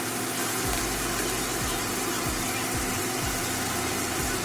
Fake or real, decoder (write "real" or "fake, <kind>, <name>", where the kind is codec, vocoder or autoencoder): real